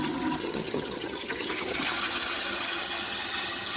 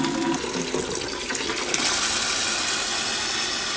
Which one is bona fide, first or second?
second